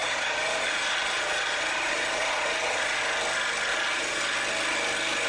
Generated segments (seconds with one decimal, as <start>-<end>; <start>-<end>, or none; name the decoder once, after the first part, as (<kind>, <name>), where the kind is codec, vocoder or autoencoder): 0.0-3.0 (vocoder, Vocos); 3.7-4.2